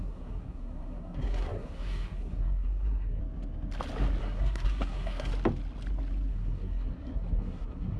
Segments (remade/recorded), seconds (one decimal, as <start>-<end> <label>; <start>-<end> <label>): 0.0-3.2 remade; 3.2-4.2 recorded; 4.2-5.3 remade; 5.3-6.3 recorded; 6.3-8.0 remade